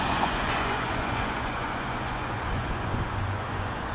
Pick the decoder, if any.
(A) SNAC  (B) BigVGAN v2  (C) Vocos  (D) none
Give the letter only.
C